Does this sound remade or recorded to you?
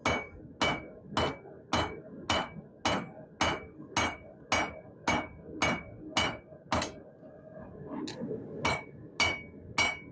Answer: recorded